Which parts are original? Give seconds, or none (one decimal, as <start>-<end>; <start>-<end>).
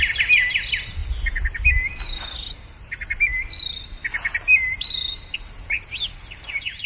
0.0-6.9